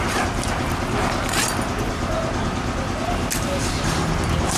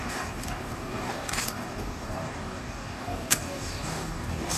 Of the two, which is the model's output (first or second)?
second